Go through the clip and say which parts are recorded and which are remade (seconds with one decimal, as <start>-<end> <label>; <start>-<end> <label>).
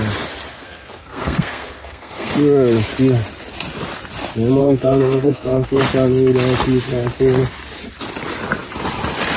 0.0-0.5 recorded; 0.5-2.3 remade; 2.3-4.6 recorded; 4.6-5.8 remade; 5.8-9.4 recorded